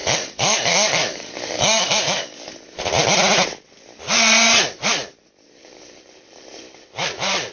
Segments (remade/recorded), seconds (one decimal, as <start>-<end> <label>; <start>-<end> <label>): 0.0-2.5 remade; 2.5-7.5 recorded